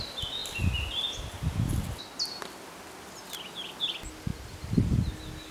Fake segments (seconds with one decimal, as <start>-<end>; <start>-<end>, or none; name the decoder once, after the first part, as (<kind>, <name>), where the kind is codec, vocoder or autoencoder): none